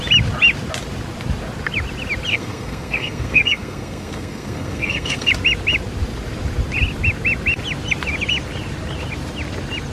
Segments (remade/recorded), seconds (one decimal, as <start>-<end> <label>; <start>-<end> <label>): 0.0-2.3 recorded; 2.3-5.3 remade; 5.3-9.9 recorded